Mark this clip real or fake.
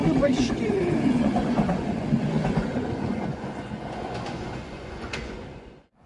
fake